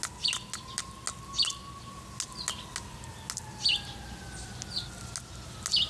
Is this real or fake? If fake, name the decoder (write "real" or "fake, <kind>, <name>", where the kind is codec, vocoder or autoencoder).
real